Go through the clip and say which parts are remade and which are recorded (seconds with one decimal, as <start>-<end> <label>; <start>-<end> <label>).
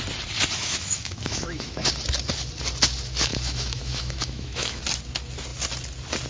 0.0-0.6 recorded; 0.6-1.9 remade; 1.9-3.3 recorded; 3.3-4.8 remade; 4.8-6.3 recorded